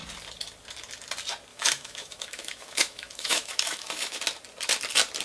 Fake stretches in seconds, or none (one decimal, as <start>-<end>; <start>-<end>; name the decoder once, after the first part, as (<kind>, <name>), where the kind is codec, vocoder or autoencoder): 1.5-4.2 (autoencoder, DAC-VAE)